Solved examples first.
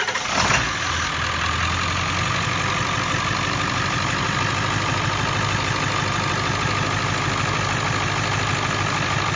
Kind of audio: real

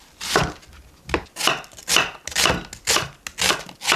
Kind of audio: real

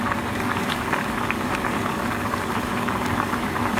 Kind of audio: fake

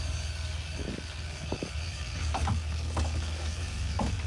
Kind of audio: fake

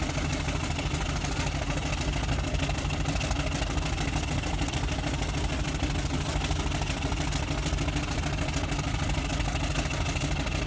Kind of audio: real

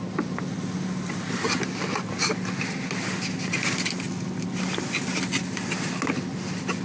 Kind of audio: real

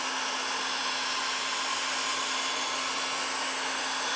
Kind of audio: real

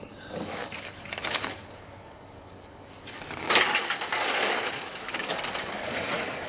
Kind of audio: fake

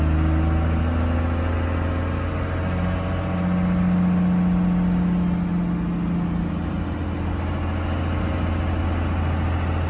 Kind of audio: real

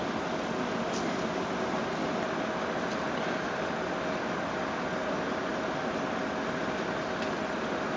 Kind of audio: real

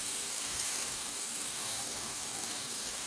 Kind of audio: fake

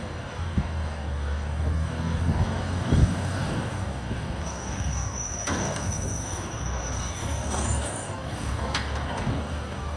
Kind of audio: fake